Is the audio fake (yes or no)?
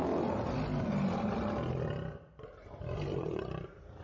no